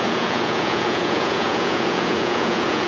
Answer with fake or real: fake